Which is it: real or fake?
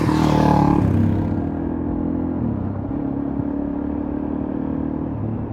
real